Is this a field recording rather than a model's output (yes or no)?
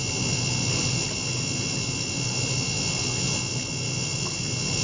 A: yes